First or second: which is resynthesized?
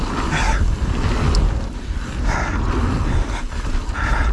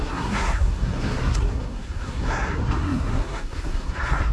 second